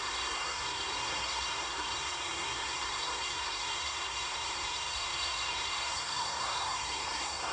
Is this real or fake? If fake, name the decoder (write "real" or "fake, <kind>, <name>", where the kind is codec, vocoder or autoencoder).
fake, codec, SNAC